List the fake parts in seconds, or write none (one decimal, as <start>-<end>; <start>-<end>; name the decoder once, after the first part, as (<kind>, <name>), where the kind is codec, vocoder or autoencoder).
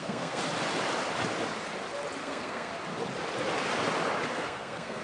0.0-0.4 (codec, SNAC); 2.2-2.7; 4.3-5.0